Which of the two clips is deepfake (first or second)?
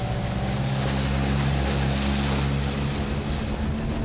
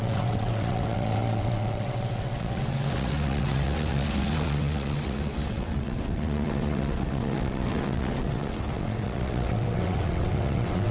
second